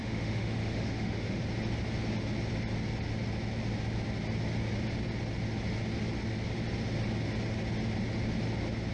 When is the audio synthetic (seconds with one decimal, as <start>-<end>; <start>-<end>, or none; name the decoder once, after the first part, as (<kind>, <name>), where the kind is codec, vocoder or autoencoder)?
0.0-1.4 (autoencoder, DAC-VAE)